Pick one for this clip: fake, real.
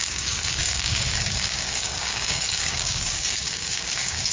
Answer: fake